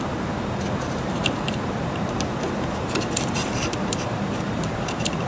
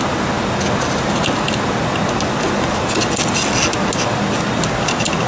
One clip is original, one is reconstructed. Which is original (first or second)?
second